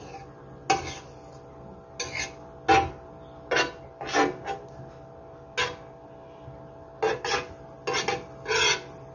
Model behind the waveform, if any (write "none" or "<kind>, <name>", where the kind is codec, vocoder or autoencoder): none